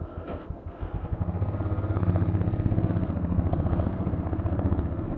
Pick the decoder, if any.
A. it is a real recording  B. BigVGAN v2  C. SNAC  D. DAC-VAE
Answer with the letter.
C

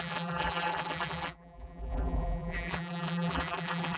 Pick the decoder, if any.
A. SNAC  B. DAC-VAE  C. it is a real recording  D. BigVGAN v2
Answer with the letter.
D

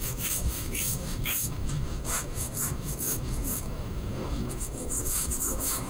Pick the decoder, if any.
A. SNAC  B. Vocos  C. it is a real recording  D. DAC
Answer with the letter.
D